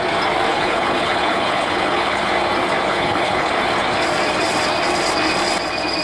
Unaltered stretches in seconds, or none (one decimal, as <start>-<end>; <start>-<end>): 0.0-0.5; 2.3-2.9; 3.5-6.0

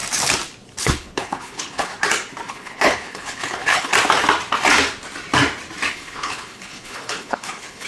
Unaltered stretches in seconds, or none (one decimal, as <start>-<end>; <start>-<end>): 0.0-0.8; 1.9-2.5; 3.9-5.9

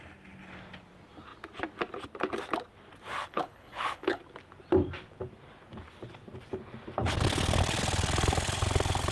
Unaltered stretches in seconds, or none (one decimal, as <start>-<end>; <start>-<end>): 0.0-3.2; 4.2-9.1

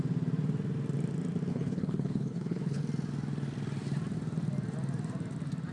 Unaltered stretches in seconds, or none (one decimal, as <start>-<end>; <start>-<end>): 0.0-1.5; 2.8-5.7

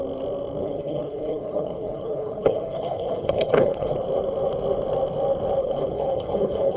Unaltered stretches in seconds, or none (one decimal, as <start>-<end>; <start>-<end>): 0.0-0.6; 3.9-5.6

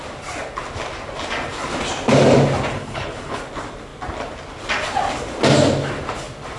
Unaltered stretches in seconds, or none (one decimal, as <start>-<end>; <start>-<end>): 0.0-2.7; 3.4-6.6